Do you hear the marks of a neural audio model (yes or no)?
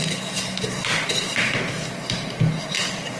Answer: no